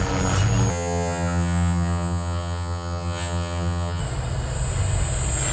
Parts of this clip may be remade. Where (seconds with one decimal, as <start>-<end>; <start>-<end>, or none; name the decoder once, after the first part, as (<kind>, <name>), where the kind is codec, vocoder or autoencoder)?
0.7-4.0 (vocoder, HiFi-GAN)